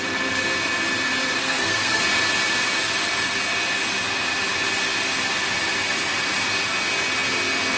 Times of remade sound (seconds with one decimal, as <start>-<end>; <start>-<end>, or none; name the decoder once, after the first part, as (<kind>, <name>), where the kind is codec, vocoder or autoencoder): 1.4-2.0 (codec, SNAC)